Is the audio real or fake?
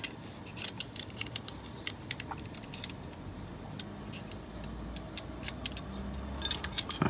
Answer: real